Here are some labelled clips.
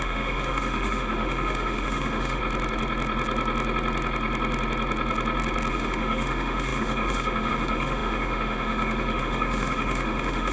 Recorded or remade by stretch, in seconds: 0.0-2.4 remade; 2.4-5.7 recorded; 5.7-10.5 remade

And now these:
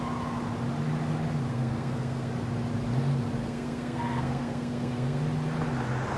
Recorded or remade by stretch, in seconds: 0.0-1.5 recorded; 1.5-2.3 remade; 2.3-3.4 recorded; 3.4-5.2 remade; 5.2-6.2 recorded

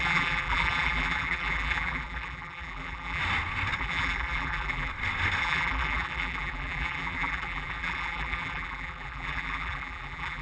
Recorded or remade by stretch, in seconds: 0.0-3.2 remade; 3.2-3.8 recorded; 3.8-4.9 remade; 4.9-5.4 recorded; 5.4-10.4 remade

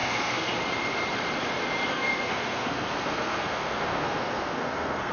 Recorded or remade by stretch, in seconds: 0.0-0.5 remade; 0.5-1.9 recorded; 1.9-5.1 remade

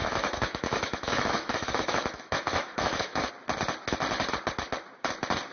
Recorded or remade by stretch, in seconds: 0.0-3.3 remade; 3.3-5.5 recorded

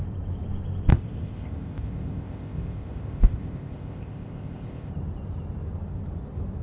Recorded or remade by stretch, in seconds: 0.0-0.9 recorded; 0.9-4.9 remade; 4.9-6.6 recorded